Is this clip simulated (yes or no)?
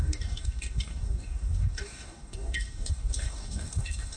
yes